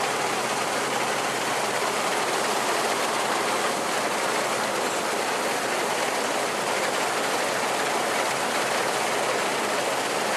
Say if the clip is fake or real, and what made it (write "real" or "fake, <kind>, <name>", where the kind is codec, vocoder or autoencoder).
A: fake, vocoder, BigVGAN v2